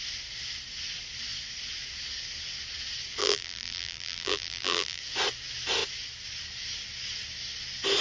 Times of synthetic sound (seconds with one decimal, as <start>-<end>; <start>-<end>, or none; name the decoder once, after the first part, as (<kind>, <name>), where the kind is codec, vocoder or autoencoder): 3.2-5.0 (vocoder, BigVGAN v2)